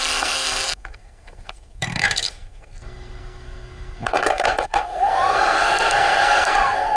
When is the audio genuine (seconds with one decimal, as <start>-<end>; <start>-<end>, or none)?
none